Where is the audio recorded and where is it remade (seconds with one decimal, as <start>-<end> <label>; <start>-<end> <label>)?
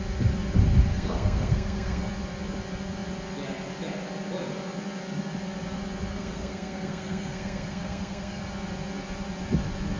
0.0-0.9 recorded; 0.9-2.1 remade; 2.1-6.1 recorded; 6.1-8.4 remade; 8.4-10.0 recorded